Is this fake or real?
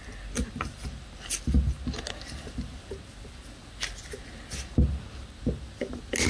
real